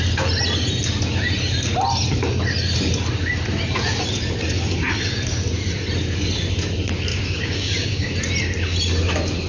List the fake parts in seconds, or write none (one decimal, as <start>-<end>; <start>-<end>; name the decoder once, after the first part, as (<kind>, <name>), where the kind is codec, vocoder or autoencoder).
7.1-8.1 (codec, DAC)